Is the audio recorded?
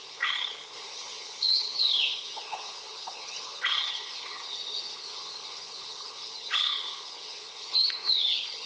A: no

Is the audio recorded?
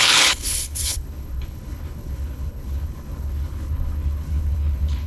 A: no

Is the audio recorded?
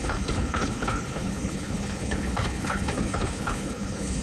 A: no